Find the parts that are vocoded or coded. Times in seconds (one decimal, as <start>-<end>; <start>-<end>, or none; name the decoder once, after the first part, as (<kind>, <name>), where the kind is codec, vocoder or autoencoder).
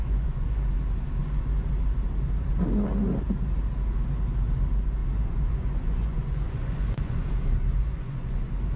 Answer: 0.0-0.7 (vocoder, Vocos); 1.2-1.7; 5.0-7.3; 7.8-8.4